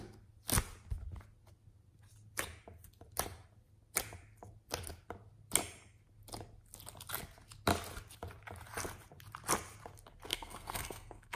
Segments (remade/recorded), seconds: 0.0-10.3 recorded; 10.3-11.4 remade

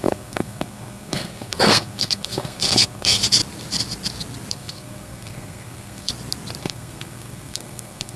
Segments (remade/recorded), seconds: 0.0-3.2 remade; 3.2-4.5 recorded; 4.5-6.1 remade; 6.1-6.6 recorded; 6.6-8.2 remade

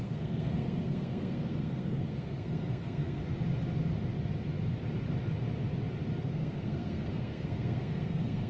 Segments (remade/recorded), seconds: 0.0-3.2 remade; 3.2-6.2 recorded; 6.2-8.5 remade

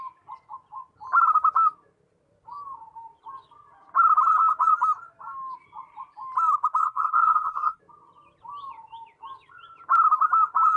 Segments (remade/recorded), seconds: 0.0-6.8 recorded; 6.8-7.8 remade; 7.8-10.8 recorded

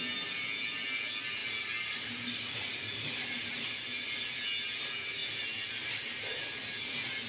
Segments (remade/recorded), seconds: 0.0-7.3 recorded